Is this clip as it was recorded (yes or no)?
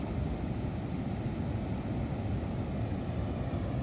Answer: yes